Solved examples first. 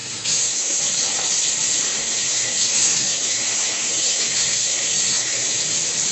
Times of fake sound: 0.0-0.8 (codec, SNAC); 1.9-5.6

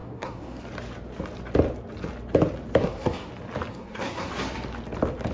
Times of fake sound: 0.0-0.6 (codec, SNAC); 2.8-3.3; 3.7-4.3

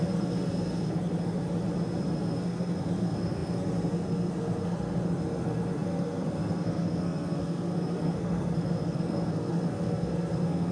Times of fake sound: 0.0-1.4 (codec, SNAC); 2.1-10.7

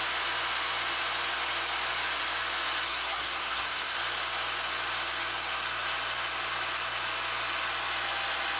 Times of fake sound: 2.9-4.0 (codec, SNAC)